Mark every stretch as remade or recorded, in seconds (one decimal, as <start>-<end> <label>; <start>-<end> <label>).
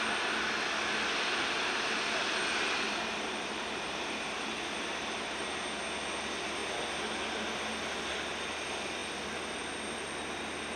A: 0.0-2.4 recorded; 2.4-5.4 remade; 5.4-10.8 recorded